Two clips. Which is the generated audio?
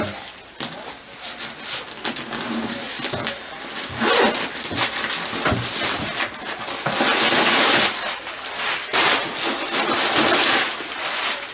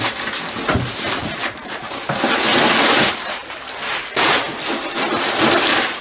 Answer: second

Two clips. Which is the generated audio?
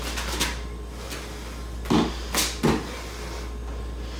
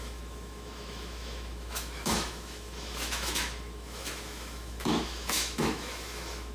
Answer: second